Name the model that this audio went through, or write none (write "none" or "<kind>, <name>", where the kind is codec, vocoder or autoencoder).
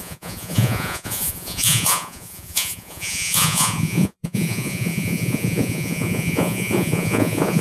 vocoder, Vocos